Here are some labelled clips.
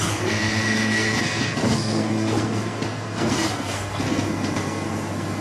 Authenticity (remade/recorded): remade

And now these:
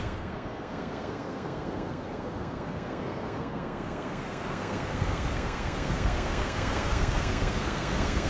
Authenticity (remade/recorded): remade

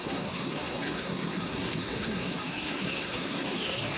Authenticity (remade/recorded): remade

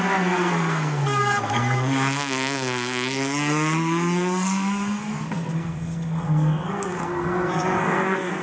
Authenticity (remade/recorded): remade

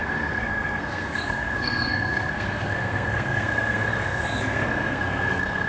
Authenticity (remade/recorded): remade